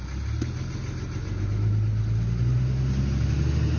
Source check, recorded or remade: recorded